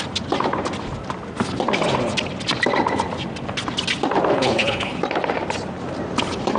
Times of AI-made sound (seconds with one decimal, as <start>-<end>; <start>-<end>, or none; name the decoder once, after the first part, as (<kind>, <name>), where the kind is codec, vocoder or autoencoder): 4.3-5.0 (codec, HILCodec)

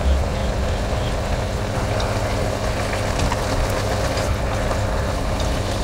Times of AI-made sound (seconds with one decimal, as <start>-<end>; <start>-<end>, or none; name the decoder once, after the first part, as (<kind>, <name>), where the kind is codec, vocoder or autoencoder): none

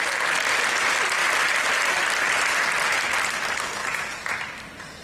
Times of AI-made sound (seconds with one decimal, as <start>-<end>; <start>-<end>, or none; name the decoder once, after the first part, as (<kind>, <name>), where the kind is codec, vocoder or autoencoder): 3.8-4.3 (vocoder, Vocos)